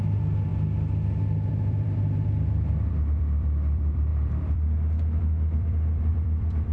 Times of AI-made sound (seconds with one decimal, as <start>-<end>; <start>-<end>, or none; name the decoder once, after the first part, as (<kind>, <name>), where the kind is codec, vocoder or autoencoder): 0.0-0.5 (vocoder, BigVGAN v2); 1.5-6.7